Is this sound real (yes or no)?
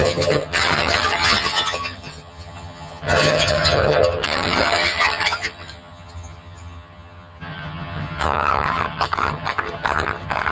no